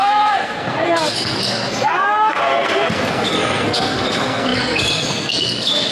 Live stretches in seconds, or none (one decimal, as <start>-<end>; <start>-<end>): none